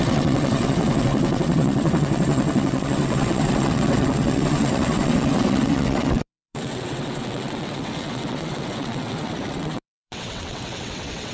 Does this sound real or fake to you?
fake